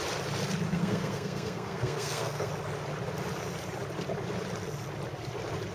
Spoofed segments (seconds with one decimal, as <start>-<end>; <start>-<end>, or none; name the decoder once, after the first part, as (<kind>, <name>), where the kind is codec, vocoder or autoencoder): 0.7-2.5 (codec, SNAC)